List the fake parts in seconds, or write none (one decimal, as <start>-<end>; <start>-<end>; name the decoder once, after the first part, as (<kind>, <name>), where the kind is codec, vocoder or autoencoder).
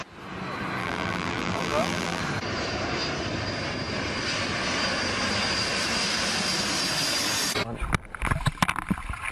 0.8-2.2 (vocoder, BigVGAN v2)